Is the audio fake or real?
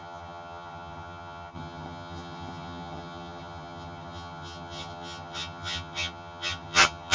fake